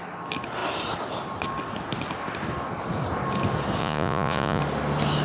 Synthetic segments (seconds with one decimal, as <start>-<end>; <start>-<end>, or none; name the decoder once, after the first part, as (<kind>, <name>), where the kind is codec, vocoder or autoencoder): 3.8-4.6 (vocoder, Vocos)